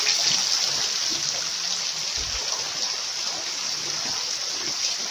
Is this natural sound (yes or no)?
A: yes